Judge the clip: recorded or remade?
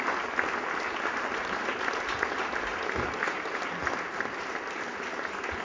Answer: recorded